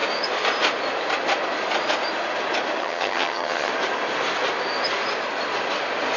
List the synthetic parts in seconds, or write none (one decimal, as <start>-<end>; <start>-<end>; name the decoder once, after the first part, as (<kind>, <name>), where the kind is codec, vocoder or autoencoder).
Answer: 2.8-3.7 (vocoder, HiFi-GAN)